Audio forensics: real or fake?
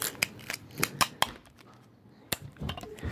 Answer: real